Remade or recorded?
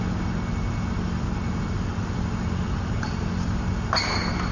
recorded